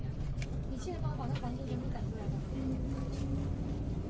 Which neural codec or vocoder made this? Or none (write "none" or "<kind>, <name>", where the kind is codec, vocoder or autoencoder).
none